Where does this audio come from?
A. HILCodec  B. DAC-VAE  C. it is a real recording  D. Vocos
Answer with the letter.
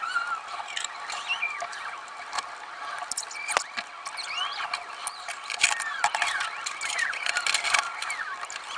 C